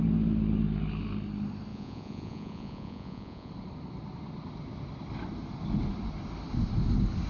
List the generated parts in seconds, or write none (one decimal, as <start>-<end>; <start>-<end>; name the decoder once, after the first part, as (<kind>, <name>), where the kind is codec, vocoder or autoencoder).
1.7-3.5 (vocoder, Vocos)